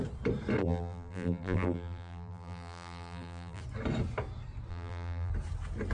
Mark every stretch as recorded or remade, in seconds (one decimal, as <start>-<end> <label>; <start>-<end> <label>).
0.0-0.6 recorded; 0.6-3.6 remade; 3.6-4.7 recorded; 4.7-5.3 remade; 5.3-5.9 recorded